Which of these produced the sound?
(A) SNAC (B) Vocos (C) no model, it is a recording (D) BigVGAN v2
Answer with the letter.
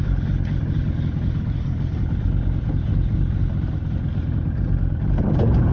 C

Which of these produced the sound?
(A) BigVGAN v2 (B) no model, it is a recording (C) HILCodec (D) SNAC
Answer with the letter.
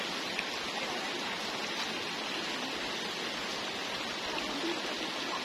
B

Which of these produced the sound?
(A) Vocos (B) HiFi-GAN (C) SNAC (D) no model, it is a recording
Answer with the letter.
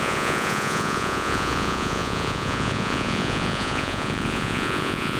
A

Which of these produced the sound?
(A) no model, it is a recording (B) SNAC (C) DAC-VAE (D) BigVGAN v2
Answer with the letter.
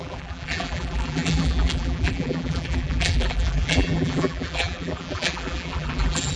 D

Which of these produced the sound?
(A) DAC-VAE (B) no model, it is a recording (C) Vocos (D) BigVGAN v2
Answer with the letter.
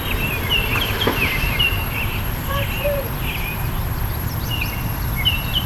D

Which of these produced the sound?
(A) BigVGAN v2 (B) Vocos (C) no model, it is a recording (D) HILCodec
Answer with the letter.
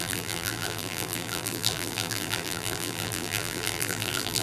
A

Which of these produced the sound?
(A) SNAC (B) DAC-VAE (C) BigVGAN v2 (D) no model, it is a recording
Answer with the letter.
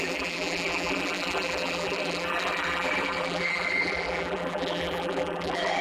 C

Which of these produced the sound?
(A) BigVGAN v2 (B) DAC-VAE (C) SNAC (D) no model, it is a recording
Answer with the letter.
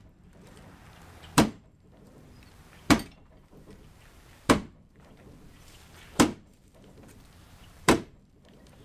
A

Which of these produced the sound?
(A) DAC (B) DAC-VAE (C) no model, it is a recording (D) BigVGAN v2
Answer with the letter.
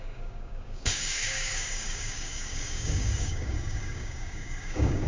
A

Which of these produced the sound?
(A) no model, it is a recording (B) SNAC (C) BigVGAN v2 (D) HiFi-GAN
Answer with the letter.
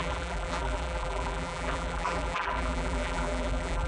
C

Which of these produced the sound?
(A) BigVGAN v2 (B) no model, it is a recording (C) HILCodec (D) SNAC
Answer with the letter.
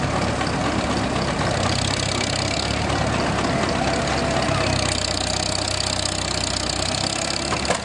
B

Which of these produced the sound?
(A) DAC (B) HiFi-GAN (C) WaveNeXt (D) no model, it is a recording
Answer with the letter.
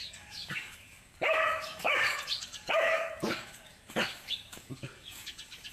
A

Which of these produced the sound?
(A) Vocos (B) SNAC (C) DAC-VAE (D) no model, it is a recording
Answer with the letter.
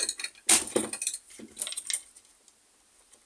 D